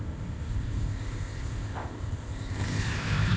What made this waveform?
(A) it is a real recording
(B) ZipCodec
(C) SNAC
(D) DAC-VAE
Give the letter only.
B